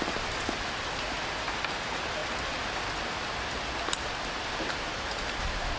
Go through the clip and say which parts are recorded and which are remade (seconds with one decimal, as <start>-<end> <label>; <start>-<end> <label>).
0.0-5.8 recorded